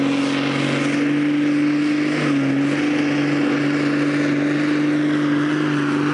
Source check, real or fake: real